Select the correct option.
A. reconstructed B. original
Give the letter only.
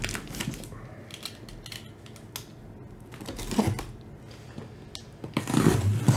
B